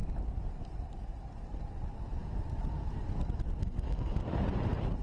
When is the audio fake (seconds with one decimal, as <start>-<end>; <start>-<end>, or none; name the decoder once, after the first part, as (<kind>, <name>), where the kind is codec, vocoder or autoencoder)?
3.6-4.2 (codec, SNAC)